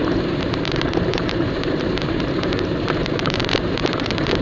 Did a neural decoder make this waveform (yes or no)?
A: yes